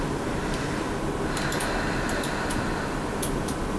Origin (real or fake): real